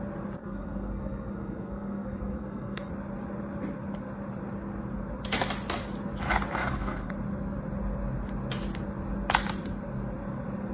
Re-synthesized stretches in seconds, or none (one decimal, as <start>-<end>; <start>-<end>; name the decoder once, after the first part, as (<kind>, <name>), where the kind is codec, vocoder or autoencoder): 0.4-2.9 (codec, SNAC); 6.6-7.1